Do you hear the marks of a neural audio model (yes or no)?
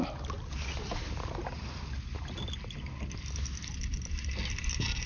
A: no